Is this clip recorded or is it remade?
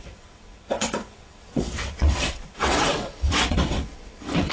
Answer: remade